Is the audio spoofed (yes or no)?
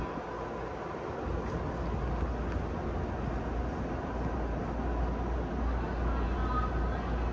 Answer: no